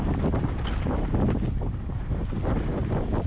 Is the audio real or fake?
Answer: real